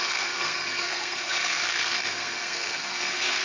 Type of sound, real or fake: fake